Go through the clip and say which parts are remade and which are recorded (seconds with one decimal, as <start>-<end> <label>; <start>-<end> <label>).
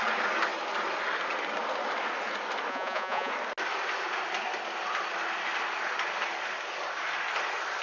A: 0.0-2.7 recorded; 2.7-3.3 remade; 3.3-7.8 recorded